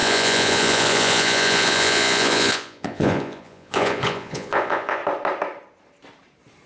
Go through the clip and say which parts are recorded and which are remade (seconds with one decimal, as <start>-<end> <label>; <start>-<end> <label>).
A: 0.0-5.0 remade; 5.0-6.7 recorded